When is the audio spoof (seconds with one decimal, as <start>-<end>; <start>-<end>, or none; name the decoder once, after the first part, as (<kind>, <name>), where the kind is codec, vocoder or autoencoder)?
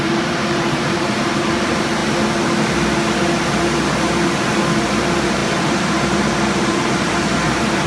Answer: 0.0-2.0 (vocoder, BigVGAN v2); 4.8-7.9